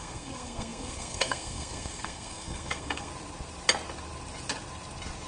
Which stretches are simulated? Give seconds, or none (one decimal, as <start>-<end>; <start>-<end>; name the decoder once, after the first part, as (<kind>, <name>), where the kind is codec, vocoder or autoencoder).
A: 0.0-3.1 (codec, SNAC)